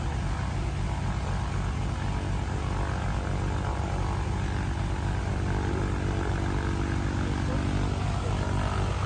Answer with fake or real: real